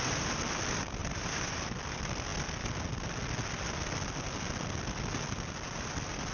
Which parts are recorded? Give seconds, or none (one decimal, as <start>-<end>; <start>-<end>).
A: 0.0-1.0; 1.6-6.3